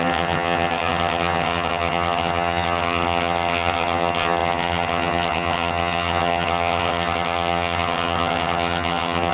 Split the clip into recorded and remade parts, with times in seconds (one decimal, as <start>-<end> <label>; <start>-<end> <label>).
0.0-9.3 remade